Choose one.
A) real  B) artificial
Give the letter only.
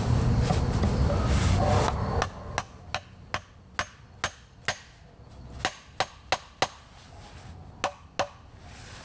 A